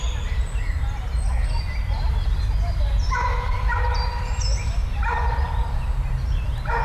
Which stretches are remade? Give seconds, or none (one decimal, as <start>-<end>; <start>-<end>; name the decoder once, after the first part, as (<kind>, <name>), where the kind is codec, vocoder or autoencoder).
0.0-1.1 (vocoder, BigVGAN v2); 2.1-2.9; 3.5-4.8; 5.3-6.8